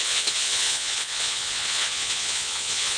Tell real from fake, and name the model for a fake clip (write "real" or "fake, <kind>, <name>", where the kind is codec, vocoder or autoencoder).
fake, vocoder, Vocos